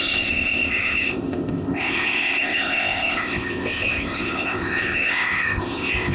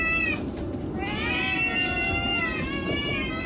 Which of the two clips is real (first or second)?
second